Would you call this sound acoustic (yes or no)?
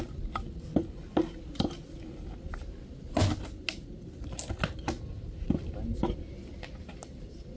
yes